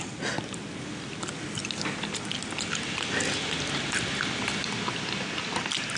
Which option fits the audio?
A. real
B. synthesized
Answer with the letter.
A